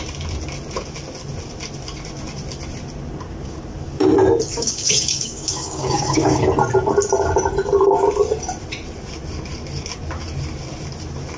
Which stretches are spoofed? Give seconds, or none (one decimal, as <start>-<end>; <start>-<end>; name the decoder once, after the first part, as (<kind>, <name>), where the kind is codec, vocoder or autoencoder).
4.5-6.4 (codec, DAC)